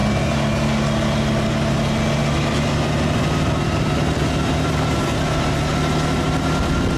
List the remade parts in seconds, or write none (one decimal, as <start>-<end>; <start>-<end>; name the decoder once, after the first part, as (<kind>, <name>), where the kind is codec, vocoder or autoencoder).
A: none